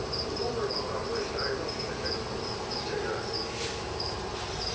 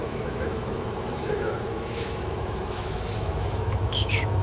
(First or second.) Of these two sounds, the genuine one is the first